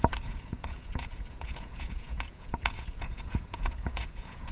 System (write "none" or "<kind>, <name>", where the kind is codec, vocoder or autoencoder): vocoder, Vocos